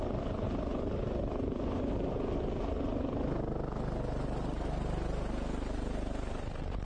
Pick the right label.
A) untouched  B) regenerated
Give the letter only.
A